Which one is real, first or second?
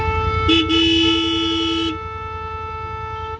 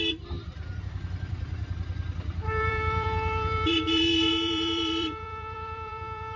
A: first